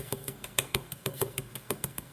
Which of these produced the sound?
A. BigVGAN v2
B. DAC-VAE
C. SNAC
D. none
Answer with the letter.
C